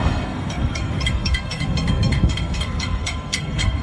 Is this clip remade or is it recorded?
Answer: remade